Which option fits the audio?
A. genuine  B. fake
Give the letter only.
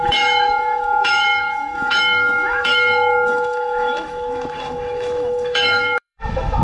B